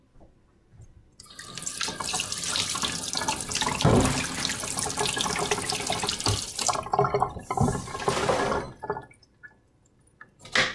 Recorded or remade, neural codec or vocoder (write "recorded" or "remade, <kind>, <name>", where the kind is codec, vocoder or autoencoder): recorded